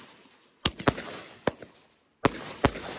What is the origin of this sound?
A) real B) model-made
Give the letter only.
A